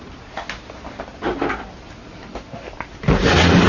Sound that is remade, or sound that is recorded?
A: recorded